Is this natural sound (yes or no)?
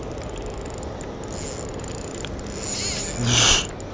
yes